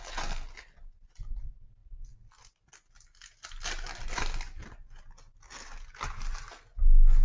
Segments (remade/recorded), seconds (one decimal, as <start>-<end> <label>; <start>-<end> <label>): 0.0-7.2 recorded

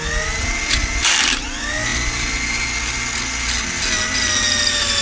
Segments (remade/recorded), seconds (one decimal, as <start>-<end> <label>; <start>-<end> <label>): 0.0-5.0 recorded